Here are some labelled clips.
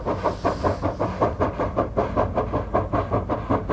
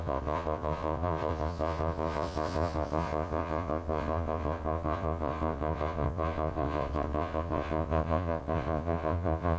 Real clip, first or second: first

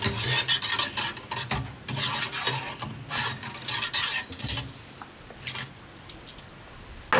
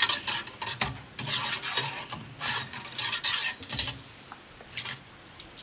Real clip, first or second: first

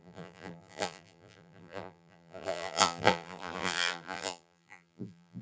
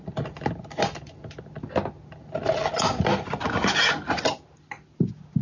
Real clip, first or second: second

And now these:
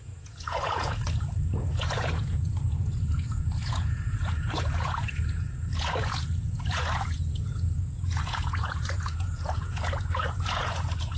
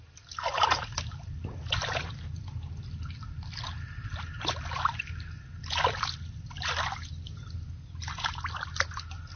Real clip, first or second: second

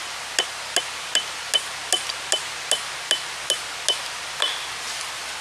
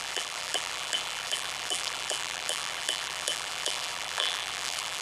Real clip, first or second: first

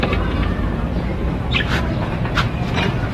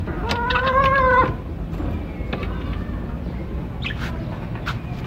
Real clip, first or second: second